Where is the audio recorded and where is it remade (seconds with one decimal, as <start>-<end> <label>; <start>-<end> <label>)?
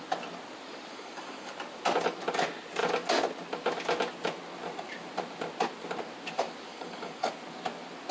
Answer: 0.0-0.9 recorded; 0.9-1.5 remade; 1.5-6.7 recorded; 6.7-7.3 remade; 7.3-8.1 recorded